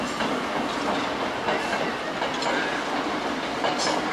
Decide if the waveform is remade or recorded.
recorded